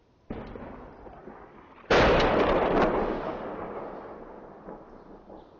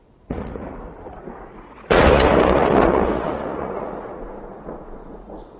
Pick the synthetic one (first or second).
second